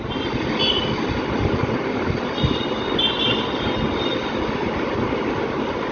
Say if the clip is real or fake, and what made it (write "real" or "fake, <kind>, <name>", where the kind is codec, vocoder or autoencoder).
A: real